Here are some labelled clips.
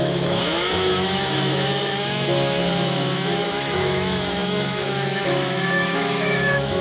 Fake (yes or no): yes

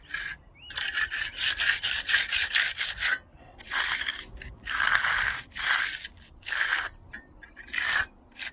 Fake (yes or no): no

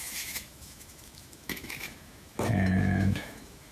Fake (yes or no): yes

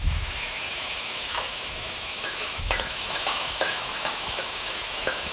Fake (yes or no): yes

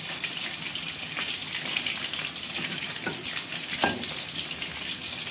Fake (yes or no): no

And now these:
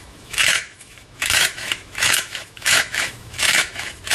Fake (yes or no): yes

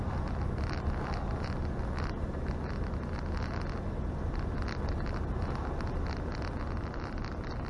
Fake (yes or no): no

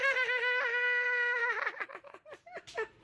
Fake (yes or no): no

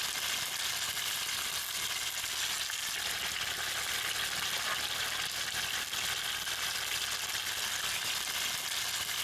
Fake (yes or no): no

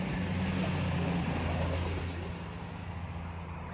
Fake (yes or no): no